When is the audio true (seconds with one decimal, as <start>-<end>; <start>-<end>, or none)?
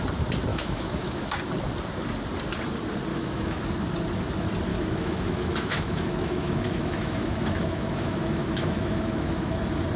0.0-0.5; 1.3-3.1; 3.6-4.7; 9.6-10.0